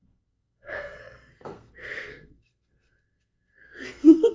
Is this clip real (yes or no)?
no